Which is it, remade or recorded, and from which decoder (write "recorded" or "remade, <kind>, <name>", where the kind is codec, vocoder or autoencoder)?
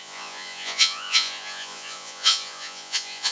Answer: remade, vocoder, Vocos